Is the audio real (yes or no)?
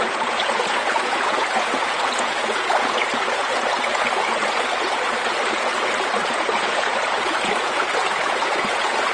no